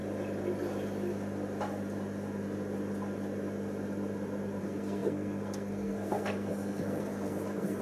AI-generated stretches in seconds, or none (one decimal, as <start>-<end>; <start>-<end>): 4.6-7.8